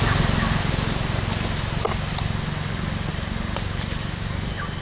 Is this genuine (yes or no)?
yes